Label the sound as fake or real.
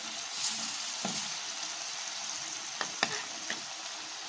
real